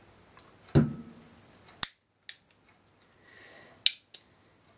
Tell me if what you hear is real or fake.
real